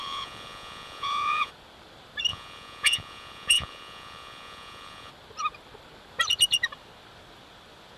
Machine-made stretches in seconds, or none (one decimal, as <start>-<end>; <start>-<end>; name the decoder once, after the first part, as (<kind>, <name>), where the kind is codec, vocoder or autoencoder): 0.0-1.5 (vocoder, Vocos); 2.3-5.1